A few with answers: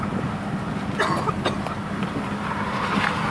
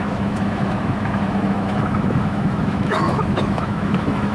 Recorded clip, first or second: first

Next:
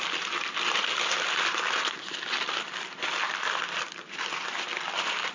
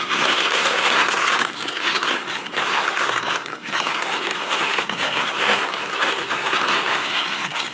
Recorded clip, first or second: first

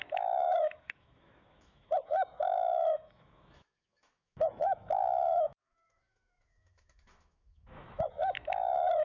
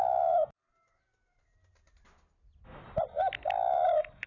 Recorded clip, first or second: second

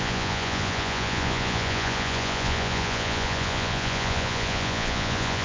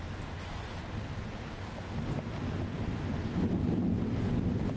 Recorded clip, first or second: second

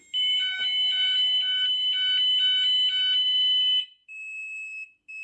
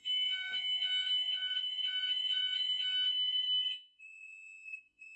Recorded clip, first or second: first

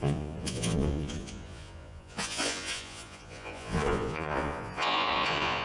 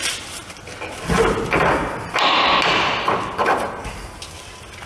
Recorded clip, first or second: second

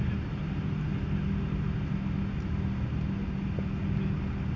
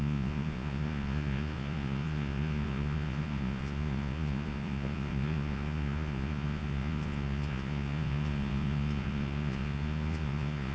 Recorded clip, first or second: first